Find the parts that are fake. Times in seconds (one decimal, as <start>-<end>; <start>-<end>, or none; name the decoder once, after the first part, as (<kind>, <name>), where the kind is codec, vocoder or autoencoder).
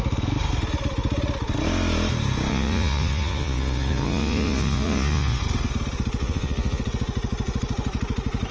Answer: 2.5-5.4 (vocoder, Vocos); 6.2-6.8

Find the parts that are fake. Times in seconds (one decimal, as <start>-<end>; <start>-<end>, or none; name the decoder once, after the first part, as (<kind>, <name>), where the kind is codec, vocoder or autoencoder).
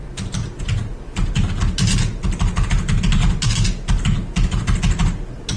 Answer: none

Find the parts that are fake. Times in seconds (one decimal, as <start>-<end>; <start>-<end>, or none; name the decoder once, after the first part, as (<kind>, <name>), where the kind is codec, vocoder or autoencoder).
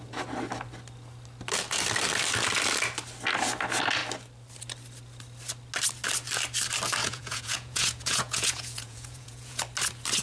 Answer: 7.0-9.6 (vocoder, Vocos)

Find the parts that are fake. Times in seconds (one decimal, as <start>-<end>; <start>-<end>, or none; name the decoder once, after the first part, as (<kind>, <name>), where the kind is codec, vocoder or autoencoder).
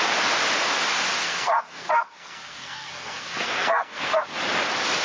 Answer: 1.2-4.2 (codec, SNAC)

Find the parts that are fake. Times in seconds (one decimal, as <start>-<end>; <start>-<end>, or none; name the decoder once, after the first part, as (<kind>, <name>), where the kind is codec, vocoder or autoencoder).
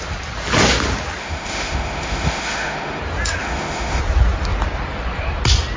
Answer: 1.2-3.0 (autoencoder, DAC-VAE); 3.4-4.0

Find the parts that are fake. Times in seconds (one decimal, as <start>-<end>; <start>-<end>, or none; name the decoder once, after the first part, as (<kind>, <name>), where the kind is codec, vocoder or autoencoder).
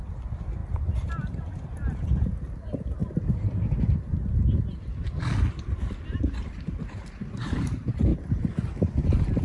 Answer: 0.0-8.1 (vocoder, BigVGAN v2)